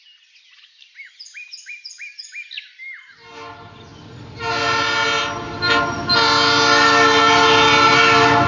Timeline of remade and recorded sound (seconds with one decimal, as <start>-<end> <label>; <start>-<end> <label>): 0.0-8.5 recorded